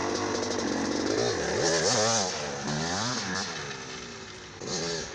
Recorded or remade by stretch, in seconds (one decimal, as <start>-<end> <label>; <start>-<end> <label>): 0.0-5.1 recorded